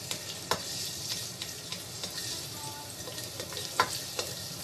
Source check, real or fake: real